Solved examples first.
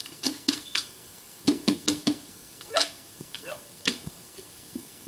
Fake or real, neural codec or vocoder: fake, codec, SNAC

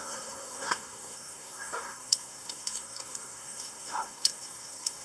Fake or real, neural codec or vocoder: fake, codec, SNAC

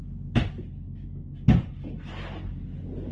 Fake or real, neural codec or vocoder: real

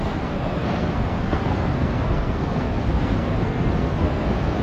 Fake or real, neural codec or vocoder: fake, codec, SNAC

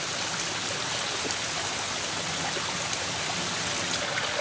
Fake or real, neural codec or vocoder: real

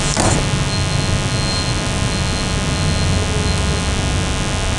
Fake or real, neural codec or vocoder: real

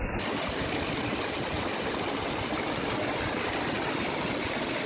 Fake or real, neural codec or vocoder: real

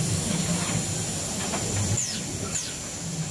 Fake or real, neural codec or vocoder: real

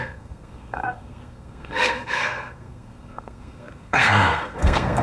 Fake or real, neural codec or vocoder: fake, codec, SNAC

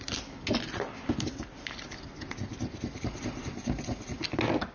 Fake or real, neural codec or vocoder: real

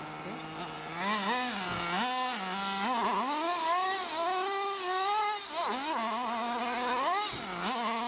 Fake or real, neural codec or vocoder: real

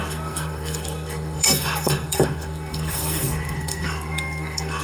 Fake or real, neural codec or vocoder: fake, codec, SNAC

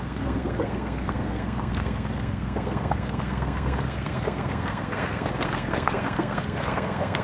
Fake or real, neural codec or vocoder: fake, codec, SNAC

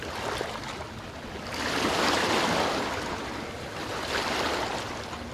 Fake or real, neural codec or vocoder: real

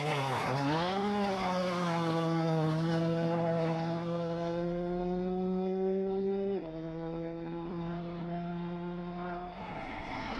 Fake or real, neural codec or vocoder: fake, codec, SNAC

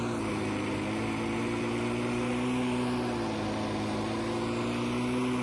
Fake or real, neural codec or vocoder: real